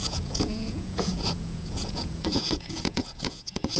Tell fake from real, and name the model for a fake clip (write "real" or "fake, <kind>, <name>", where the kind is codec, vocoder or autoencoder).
fake, vocoder, Vocos